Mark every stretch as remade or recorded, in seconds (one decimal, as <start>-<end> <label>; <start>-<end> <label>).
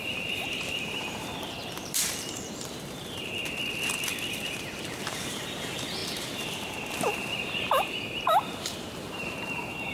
0.0-3.4 remade; 3.4-4.3 recorded; 4.3-9.9 remade